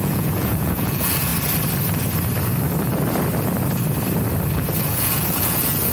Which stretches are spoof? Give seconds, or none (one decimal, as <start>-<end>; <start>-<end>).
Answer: 0.0-1.3; 4.8-5.9

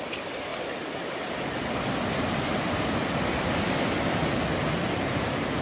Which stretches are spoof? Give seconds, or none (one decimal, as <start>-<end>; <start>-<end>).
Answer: none

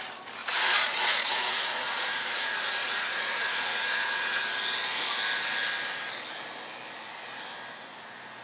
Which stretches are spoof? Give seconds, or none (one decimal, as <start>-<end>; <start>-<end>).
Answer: 0.4-4.4

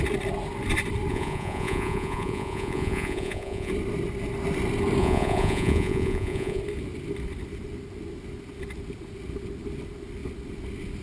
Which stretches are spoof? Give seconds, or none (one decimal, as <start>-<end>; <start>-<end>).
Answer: 1.1-3.7; 5.0-6.6